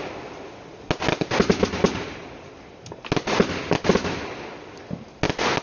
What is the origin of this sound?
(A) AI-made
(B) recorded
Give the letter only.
B